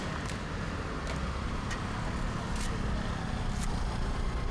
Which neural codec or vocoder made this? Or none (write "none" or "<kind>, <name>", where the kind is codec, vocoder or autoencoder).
none